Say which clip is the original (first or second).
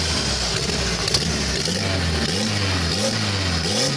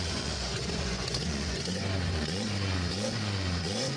first